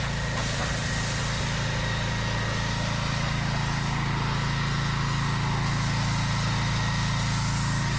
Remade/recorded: recorded